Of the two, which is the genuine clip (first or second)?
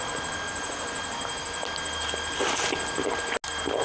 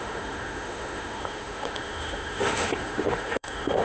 first